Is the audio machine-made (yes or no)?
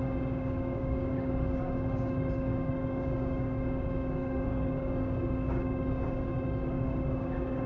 yes